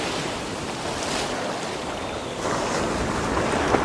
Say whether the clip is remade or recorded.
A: recorded